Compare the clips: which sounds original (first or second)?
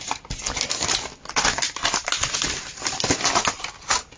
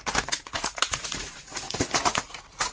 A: first